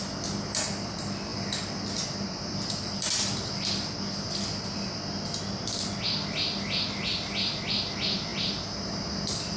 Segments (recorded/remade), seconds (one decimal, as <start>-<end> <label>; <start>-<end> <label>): 0.0-9.6 recorded

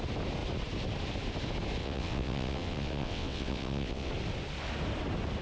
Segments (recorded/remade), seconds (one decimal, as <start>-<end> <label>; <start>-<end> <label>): 0.0-1.8 recorded; 1.8-4.1 remade; 4.1-5.4 recorded

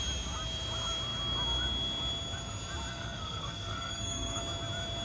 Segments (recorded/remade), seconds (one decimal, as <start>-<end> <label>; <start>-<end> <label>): 0.0-2.9 recorded; 2.9-4.4 remade; 4.4-5.0 recorded

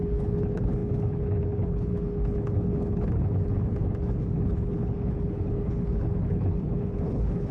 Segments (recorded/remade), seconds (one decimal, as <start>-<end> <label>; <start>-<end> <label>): 0.0-7.5 remade